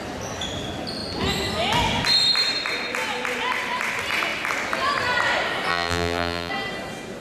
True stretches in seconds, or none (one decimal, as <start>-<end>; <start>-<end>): 0.0-5.7; 6.5-7.2